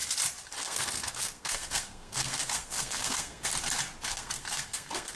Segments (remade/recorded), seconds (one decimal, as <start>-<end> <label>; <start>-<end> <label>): 0.0-0.6 recorded; 0.6-3.5 remade; 3.5-4.1 recorded; 4.1-5.2 remade